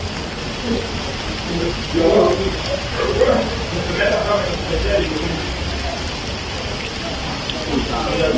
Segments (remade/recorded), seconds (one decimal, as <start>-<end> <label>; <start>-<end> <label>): 0.0-8.4 recorded